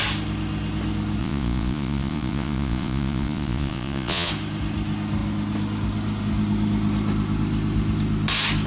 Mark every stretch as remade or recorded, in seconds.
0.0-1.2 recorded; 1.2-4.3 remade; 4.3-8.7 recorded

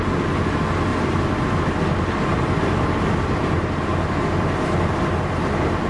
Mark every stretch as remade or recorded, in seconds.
0.0-0.9 recorded; 0.9-1.6 remade; 1.6-2.3 recorded; 2.3-5.9 remade

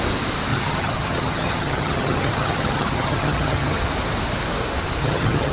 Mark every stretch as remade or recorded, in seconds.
0.0-0.5 recorded; 0.5-3.8 remade; 3.8-5.0 recorded; 5.0-5.5 remade

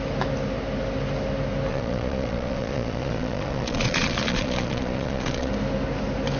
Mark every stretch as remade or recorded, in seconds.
0.0-1.7 recorded; 1.7-5.5 remade; 5.5-6.4 recorded

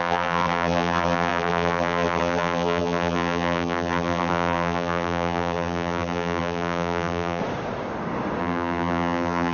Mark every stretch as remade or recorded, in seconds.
0.0-7.4 remade; 7.4-8.4 recorded; 8.4-9.5 remade

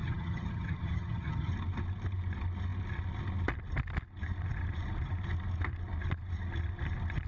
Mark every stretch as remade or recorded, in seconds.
0.0-1.5 remade; 1.5-7.3 recorded

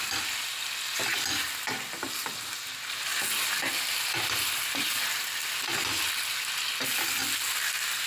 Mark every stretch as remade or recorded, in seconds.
0.0-8.1 recorded

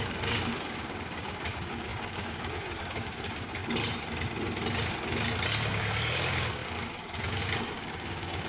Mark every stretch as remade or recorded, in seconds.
0.0-3.6 remade; 3.6-5.7 recorded; 5.7-8.5 remade